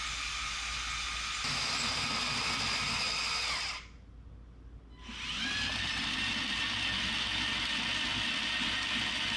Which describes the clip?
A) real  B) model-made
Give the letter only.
A